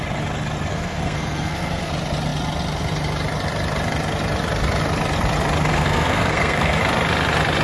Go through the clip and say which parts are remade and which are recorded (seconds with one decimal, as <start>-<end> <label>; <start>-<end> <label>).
0.0-0.7 recorded; 0.7-1.9 remade; 1.9-5.7 recorded; 5.7-6.8 remade; 6.8-7.6 recorded

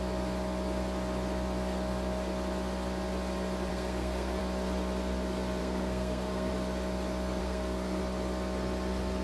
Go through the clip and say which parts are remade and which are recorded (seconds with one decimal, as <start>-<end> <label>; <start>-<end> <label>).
0.0-3.7 recorded; 3.7-4.4 remade; 4.4-5.6 recorded; 5.6-6.5 remade; 6.5-7.4 recorded; 7.4-8.0 remade; 8.0-9.2 recorded

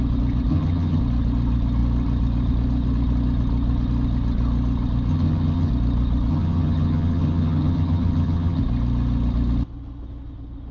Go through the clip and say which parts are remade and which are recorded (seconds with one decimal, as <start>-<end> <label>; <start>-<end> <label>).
0.0-0.5 recorded; 0.5-1.0 remade; 1.0-5.1 recorded; 5.1-5.7 remade; 5.7-6.3 recorded; 6.3-8.6 remade; 8.6-10.7 recorded

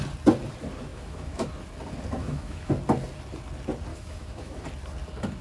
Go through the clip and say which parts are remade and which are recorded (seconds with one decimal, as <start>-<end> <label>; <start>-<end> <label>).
0.0-0.9 recorded; 0.9-1.5 remade; 1.5-2.2 recorded; 2.2-2.7 remade; 2.7-3.9 recorded; 3.9-4.6 remade; 4.6-5.4 recorded

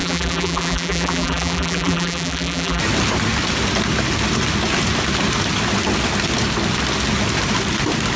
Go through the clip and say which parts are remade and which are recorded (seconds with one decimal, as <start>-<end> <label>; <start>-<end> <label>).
0.0-2.8 remade; 2.8-8.2 recorded

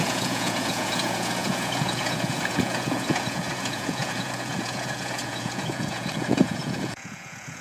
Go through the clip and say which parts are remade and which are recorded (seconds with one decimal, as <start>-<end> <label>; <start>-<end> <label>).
0.0-7.6 remade

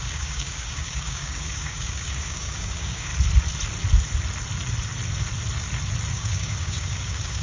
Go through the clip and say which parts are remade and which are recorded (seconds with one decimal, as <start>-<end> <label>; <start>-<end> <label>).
0.0-3.1 remade; 3.1-6.1 recorded; 6.1-7.4 remade

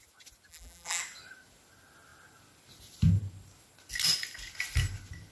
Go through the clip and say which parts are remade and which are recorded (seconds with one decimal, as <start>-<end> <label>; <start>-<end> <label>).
0.0-0.5 recorded; 0.5-1.0 remade; 1.0-5.3 recorded